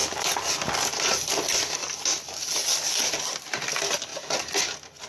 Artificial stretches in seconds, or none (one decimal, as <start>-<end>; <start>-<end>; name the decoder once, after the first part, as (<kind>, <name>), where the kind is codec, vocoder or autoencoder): none